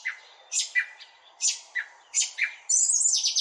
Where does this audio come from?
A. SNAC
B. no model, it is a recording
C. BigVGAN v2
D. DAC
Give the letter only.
B